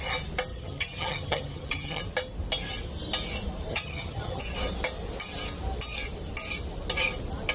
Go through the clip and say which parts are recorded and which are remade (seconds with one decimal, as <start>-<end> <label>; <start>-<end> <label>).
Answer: 0.0-0.5 recorded; 0.5-2.0 remade; 2.0-3.7 recorded; 3.7-4.4 remade; 4.4-7.5 recorded